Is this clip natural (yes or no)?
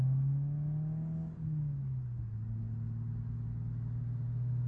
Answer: yes